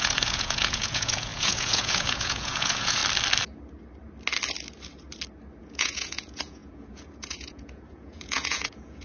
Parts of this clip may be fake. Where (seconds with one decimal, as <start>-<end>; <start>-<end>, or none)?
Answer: 0.0-3.0; 5.6-9.0